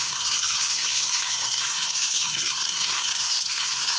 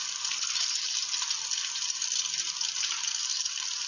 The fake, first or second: first